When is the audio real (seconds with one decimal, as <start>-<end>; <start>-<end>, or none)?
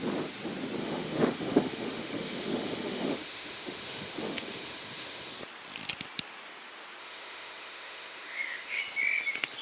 0.0-0.8; 5.3-7.0; 8.8-9.6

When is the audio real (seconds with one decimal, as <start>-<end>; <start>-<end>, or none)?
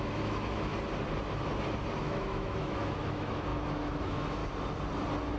0.7-2.0; 4.4-5.4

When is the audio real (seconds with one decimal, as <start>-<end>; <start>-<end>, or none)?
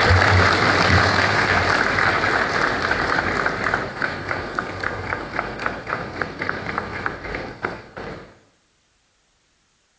0.0-1.0; 1.6-3.9; 8.1-10.0